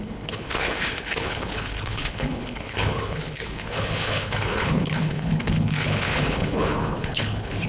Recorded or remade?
remade